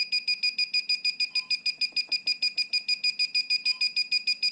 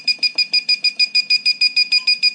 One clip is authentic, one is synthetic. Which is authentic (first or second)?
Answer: first